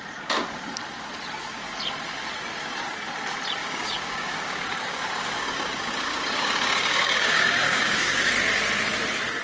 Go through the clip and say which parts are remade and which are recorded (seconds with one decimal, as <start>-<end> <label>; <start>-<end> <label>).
0.0-3.6 recorded; 3.6-8.3 remade; 8.3-9.4 recorded